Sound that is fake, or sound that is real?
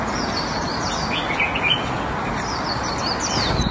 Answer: real